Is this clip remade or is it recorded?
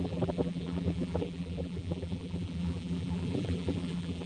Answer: remade